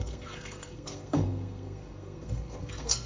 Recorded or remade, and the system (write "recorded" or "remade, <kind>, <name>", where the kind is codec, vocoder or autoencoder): remade, codec, SNAC